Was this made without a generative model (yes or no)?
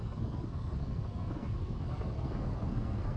no